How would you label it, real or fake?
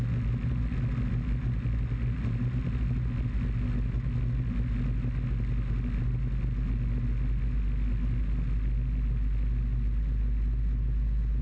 real